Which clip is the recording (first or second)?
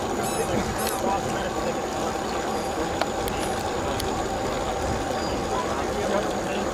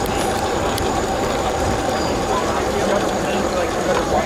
first